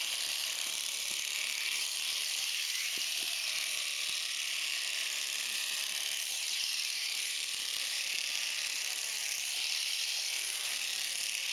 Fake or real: fake